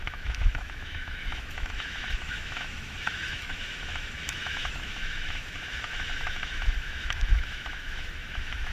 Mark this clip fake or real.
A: fake